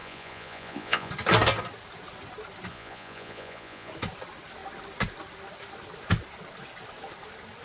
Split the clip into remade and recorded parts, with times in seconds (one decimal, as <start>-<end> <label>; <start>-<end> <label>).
0.0-1.1 remade; 1.1-2.7 recorded; 2.7-3.9 remade; 3.9-7.6 recorded

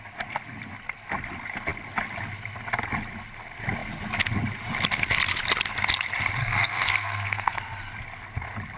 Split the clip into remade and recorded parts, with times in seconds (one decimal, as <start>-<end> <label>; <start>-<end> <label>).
0.0-6.4 recorded; 6.4-7.6 remade; 7.6-8.8 recorded

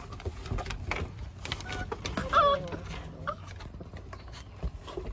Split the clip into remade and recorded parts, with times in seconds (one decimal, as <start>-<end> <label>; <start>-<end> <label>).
0.0-5.1 recorded

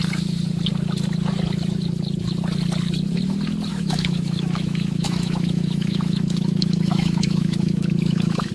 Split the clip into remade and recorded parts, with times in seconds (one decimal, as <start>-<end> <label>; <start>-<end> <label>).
0.0-3.7 recorded; 3.7-8.5 remade

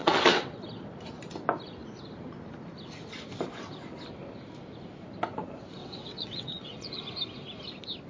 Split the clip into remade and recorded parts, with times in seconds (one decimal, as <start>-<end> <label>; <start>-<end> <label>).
0.0-0.6 remade; 0.6-5.8 recorded; 5.8-7.0 remade; 7.0-8.1 recorded

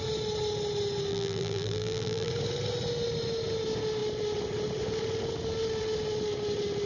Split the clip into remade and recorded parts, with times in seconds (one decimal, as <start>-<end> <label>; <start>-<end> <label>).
0.0-1.1 recorded; 1.1-2.3 remade; 2.3-6.9 recorded

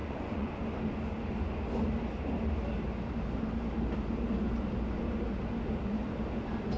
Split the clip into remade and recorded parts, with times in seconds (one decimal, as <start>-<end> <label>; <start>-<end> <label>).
0.0-0.5 remade; 0.5-6.8 recorded

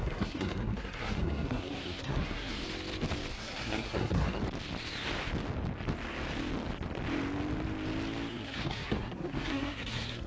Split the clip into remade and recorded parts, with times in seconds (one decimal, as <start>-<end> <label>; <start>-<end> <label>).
0.0-2.6 remade; 2.6-3.3 recorded; 3.3-4.4 remade; 4.4-8.3 recorded; 8.3-10.3 remade